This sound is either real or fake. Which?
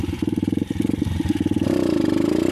real